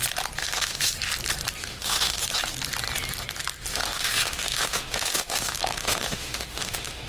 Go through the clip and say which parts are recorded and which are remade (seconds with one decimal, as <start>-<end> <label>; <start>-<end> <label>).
0.0-0.4 recorded; 0.4-0.9 remade; 0.9-1.6 recorded; 1.6-2.2 remade; 2.2-3.7 recorded; 3.7-7.1 remade